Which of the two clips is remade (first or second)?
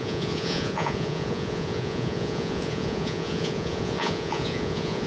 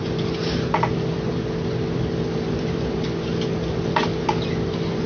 first